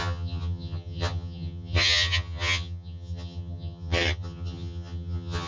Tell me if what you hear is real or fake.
fake